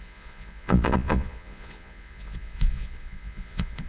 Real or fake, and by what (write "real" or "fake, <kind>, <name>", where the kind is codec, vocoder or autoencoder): fake, vocoder, Vocos